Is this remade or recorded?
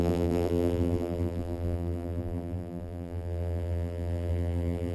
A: remade